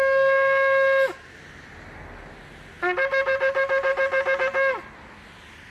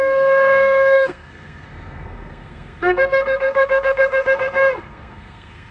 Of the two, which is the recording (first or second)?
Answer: first